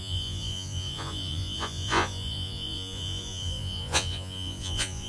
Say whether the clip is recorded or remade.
remade